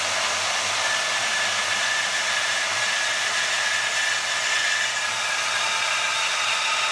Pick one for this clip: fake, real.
real